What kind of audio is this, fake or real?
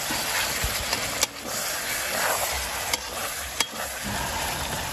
real